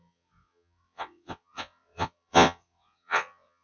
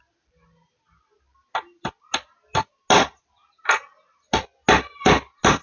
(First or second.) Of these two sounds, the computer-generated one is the first